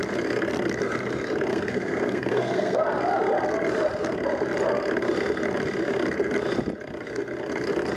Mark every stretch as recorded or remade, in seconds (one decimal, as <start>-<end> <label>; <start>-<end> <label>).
0.0-1.5 recorded; 1.5-2.8 remade; 2.8-8.0 recorded